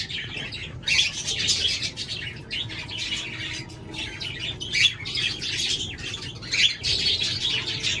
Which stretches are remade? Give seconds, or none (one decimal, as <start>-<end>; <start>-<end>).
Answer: none

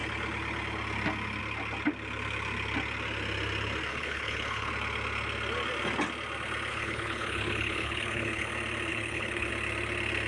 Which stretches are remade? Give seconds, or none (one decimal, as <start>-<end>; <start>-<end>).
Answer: 3.9-4.7; 6.7-8.5; 8.9-9.5

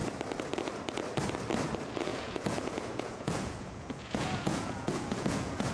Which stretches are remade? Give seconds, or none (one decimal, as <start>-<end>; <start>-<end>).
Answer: 2.1-5.7

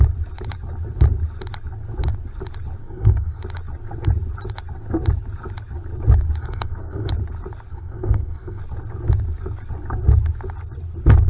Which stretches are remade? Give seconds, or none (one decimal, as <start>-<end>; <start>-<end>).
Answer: 2.8-3.4; 6.4-7.1; 7.7-8.6

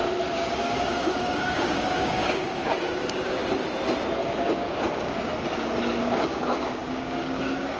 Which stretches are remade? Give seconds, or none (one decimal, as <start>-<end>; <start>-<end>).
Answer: 0.0-3.4; 4.2-5.3; 6.0-7.8

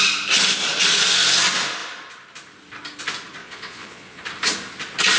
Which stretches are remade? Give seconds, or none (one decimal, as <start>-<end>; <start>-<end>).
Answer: 3.4-4.2

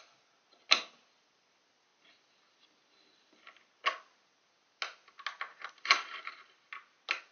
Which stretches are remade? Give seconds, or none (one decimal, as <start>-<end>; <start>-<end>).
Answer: none